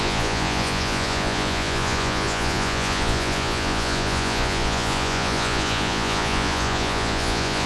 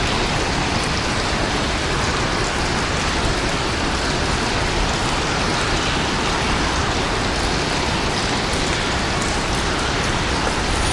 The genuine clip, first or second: second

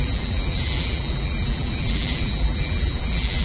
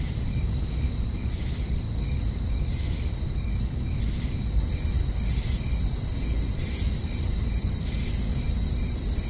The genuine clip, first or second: second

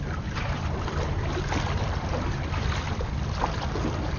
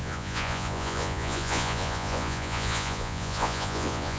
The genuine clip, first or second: first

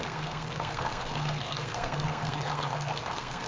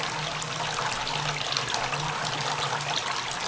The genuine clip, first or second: second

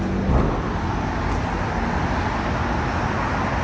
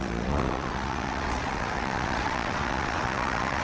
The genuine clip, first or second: first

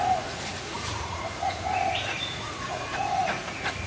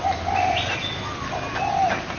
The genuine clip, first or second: second